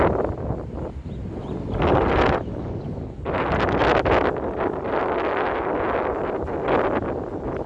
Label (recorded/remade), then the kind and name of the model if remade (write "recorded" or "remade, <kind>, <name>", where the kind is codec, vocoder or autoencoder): recorded